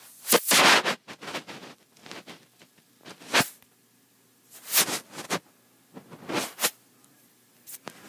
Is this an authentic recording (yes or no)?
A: yes